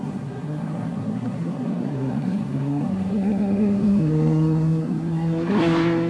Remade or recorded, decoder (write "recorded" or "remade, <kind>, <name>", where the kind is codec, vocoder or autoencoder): remade, codec, SNAC